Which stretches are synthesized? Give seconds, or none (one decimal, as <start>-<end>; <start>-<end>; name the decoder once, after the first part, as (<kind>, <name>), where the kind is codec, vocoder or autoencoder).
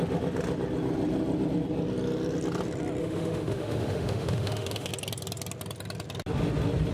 3.0-4.9 (autoencoder, DAC-VAE)